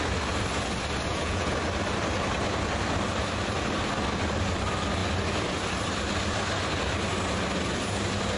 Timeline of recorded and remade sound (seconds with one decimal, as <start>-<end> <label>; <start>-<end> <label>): 0.0-1.1 recorded; 1.1-1.6 remade; 1.6-8.4 recorded